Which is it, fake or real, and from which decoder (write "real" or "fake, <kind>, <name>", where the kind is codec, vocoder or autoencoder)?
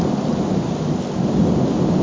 real